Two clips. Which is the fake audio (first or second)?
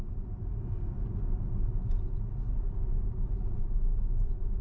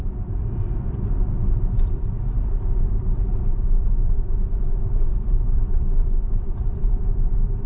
second